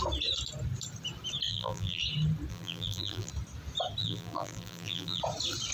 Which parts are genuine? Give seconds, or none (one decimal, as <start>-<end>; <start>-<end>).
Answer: 0.0-1.5; 2.0-2.5; 3.3-4.0; 5.2-5.7